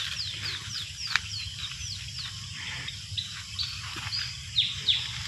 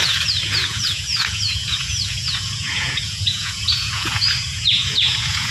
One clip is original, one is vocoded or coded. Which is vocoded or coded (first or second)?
second